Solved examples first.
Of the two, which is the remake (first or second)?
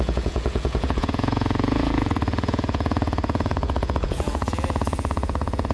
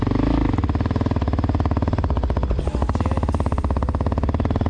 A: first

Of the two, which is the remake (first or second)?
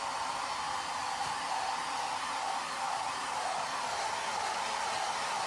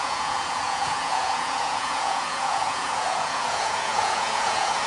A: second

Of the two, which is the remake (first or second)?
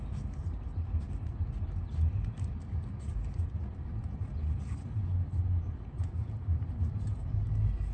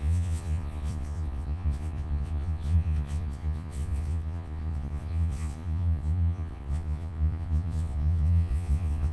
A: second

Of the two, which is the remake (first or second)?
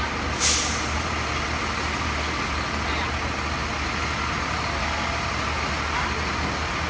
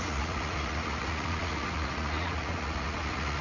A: second